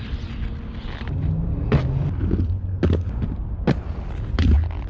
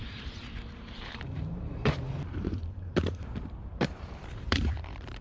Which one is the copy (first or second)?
second